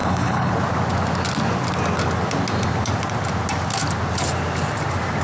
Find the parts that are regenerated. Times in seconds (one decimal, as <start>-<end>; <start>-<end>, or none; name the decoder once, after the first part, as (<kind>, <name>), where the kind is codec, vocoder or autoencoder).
0.0-0.5 (codec, HILCodec)